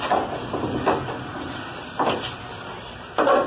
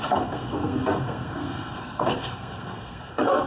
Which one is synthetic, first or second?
second